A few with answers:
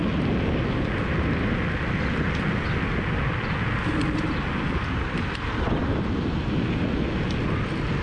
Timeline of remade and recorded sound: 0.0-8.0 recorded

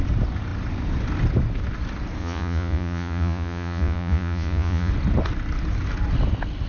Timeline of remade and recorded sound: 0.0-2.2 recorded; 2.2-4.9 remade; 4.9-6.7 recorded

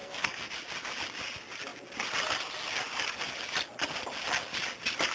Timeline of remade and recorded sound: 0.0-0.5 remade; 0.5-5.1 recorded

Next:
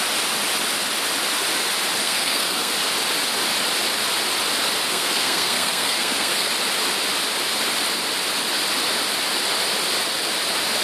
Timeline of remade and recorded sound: 0.0-2.0 recorded; 2.0-2.7 remade; 2.7-4.9 recorded; 4.9-6.5 remade; 6.5-10.8 recorded

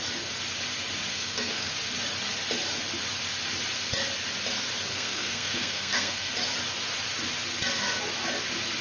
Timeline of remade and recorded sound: 0.0-1.1 recorded; 1.1-1.7 remade; 1.7-4.9 recorded; 4.9-6.3 remade; 6.3-8.8 recorded